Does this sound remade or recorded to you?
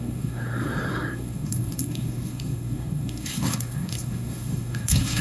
remade